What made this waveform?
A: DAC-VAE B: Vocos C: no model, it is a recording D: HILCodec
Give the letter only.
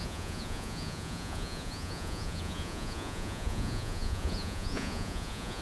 B